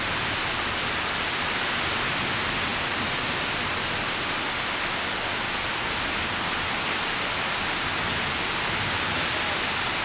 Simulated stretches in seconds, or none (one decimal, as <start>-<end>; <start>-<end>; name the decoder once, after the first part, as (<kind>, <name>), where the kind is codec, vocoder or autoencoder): none